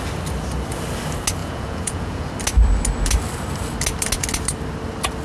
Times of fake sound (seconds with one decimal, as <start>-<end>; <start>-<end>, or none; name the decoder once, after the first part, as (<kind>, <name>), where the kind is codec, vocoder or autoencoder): 1.4-2.3 (vocoder, Vocos)